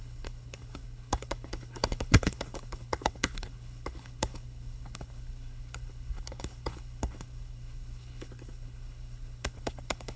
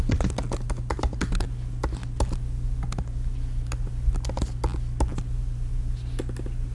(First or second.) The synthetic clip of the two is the first